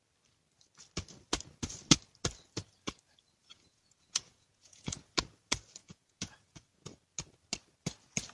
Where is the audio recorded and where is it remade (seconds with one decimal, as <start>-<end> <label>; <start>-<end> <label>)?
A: 0.0-3.4 recorded; 3.4-5.1 remade; 5.1-5.8 recorded; 5.8-6.8 remade; 6.8-8.3 recorded